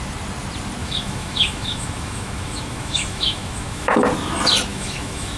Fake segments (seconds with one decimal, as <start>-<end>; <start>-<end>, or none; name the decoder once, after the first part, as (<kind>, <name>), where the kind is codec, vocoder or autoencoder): 0.8-4.0 (autoencoder, DAC-VAE); 4.7-5.4